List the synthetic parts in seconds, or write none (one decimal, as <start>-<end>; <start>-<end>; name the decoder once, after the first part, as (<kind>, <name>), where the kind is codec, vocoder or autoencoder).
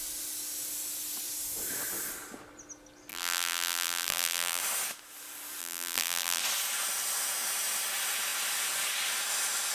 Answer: 3.1-4.6 (vocoder, BigVGAN v2); 5.6-6.4